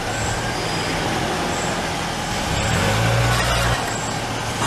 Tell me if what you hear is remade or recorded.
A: recorded